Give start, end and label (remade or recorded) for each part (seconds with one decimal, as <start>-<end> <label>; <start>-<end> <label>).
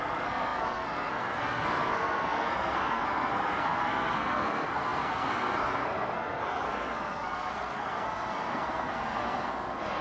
0.0-10.0 remade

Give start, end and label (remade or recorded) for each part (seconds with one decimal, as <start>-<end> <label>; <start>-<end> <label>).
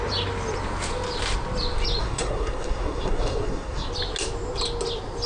0.0-2.0 recorded; 2.0-3.9 remade; 3.9-5.3 recorded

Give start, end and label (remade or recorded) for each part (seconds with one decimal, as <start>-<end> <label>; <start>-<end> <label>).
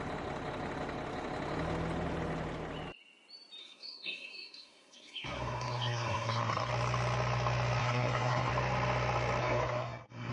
0.0-3.6 recorded; 3.6-6.7 remade; 6.7-7.8 recorded; 7.8-8.5 remade; 8.5-9.4 recorded; 9.4-10.3 remade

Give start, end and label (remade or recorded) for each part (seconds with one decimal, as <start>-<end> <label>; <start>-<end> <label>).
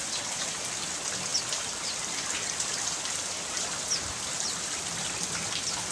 0.0-5.9 recorded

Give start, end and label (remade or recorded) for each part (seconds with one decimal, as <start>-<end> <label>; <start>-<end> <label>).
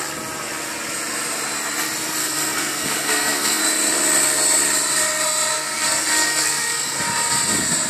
0.0-2.2 recorded; 2.2-3.6 remade; 3.6-5.5 recorded; 5.5-7.0 remade; 7.0-7.9 recorded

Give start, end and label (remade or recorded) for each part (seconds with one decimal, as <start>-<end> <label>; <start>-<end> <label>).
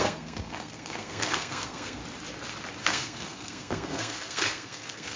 0.0-2.0 remade; 2.0-2.8 recorded; 2.8-5.2 remade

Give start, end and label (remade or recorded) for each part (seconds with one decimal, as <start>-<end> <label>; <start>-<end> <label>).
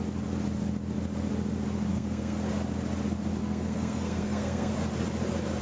0.0-1.9 recorded; 1.9-2.5 remade; 2.5-3.4 recorded; 3.4-4.7 remade; 4.7-5.6 recorded